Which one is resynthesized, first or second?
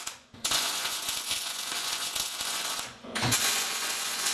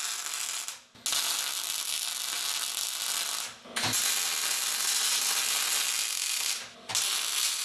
first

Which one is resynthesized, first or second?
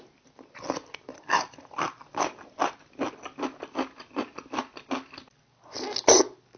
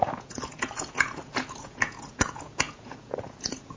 second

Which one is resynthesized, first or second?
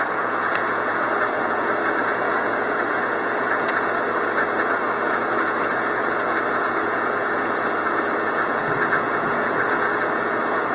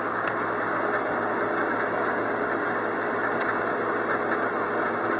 first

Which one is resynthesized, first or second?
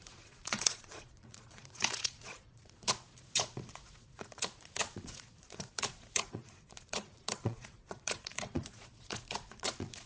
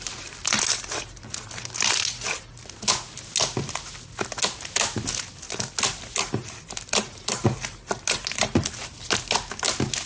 first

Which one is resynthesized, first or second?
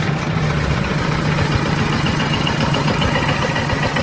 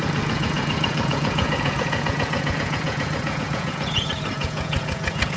second